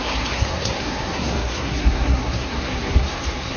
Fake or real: fake